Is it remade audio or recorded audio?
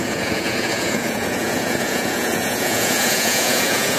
remade